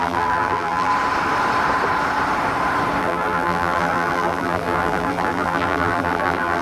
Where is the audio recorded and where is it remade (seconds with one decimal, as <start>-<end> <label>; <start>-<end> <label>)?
0.0-0.9 remade; 0.9-3.0 recorded; 3.0-6.6 remade